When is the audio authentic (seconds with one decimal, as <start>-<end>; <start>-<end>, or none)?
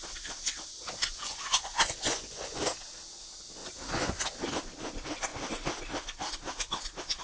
0.0-1.0; 2.6-3.6; 4.2-7.2